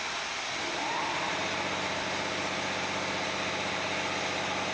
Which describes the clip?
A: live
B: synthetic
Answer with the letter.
A